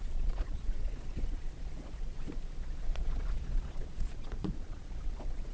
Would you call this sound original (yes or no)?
no